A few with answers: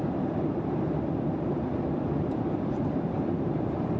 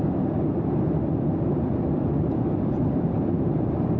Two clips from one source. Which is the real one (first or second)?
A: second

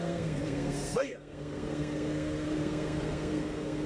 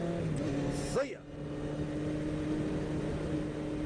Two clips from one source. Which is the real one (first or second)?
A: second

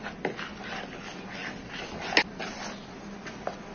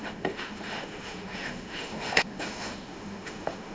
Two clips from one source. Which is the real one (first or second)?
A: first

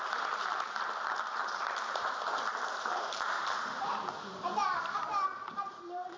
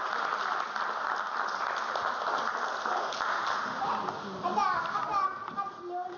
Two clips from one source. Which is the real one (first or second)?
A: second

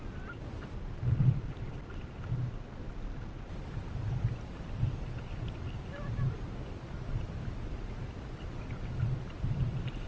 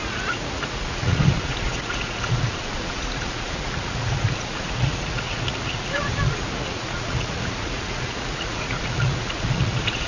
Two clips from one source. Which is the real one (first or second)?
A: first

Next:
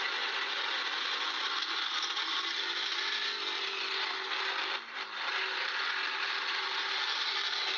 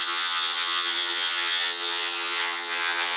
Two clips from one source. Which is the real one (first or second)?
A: first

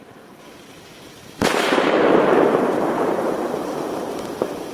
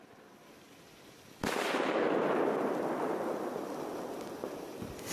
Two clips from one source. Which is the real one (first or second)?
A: second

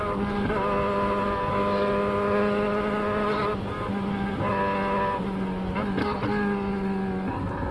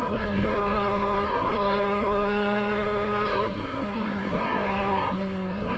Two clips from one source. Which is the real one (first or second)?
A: first